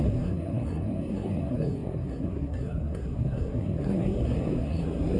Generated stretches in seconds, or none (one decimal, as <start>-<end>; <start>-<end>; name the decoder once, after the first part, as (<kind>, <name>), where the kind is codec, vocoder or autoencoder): 0.0-5.2 (codec, SNAC)